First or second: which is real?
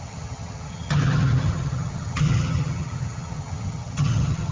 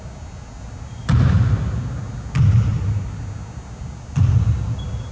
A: second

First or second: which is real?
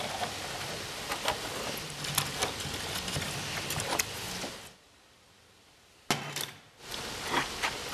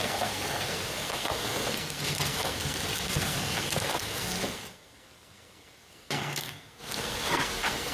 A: first